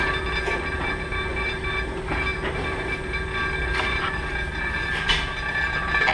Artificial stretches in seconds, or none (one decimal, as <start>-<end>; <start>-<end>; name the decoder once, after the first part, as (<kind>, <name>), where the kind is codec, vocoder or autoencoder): none